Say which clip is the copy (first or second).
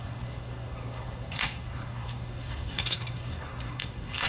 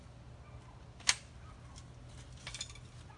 first